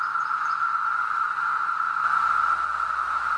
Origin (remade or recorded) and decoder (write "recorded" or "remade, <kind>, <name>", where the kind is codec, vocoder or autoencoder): recorded